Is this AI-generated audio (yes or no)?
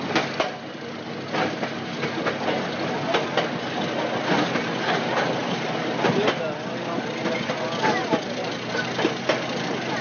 no